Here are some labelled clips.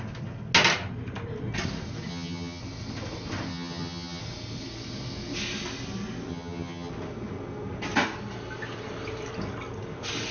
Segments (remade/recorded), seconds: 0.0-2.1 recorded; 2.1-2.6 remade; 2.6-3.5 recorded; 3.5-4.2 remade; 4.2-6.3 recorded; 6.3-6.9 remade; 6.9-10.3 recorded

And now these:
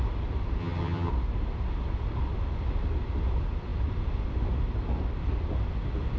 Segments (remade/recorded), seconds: 0.0-0.6 recorded; 0.6-1.1 remade; 1.1-6.2 recorded

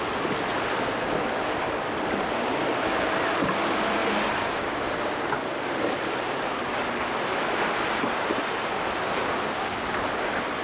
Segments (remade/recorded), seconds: 0.0-10.6 recorded

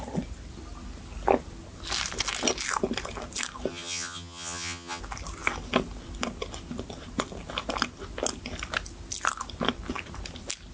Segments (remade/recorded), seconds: 0.0-3.7 recorded; 3.7-5.0 remade; 5.0-10.7 recorded

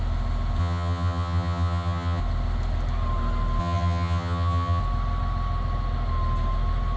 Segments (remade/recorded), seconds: 0.0-0.6 recorded; 0.6-2.2 remade; 2.2-3.6 recorded; 3.6-4.8 remade; 4.8-7.0 recorded

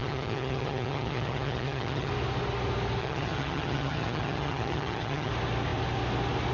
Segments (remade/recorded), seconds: 0.0-2.1 remade; 2.1-3.0 recorded; 3.0-5.3 remade; 5.3-6.5 recorded

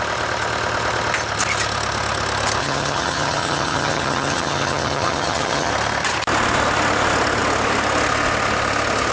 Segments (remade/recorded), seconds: 0.0-2.6 recorded; 2.6-5.7 remade; 5.7-9.1 recorded

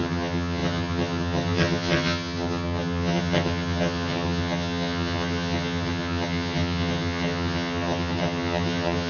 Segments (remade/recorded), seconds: 0.0-9.1 remade